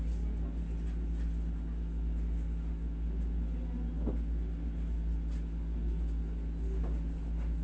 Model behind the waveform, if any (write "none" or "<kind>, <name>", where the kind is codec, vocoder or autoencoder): none